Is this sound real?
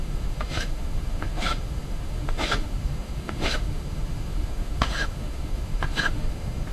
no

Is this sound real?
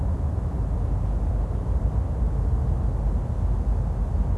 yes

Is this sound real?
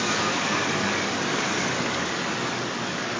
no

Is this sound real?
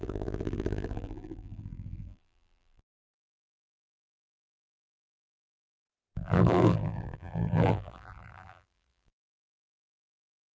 no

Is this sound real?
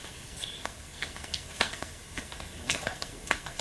no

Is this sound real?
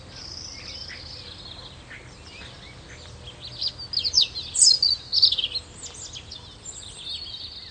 yes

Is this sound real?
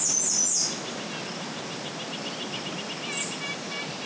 yes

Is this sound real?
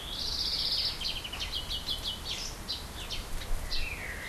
yes